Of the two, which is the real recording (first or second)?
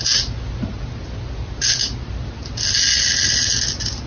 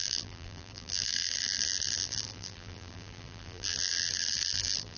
first